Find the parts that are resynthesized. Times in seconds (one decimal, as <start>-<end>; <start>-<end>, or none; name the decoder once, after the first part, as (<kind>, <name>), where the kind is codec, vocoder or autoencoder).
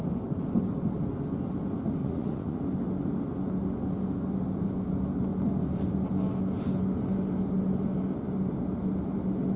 2.0-2.6 (vocoder, Vocos)